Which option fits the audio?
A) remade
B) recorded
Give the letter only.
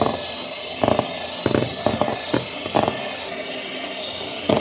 B